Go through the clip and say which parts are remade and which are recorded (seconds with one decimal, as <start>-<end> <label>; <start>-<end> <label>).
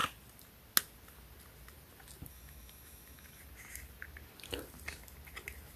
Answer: 0.0-2.3 recorded; 2.3-3.4 remade; 3.4-5.8 recorded